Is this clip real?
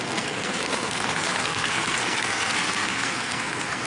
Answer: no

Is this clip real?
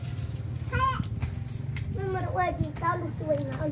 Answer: yes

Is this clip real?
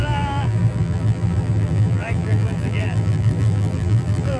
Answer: no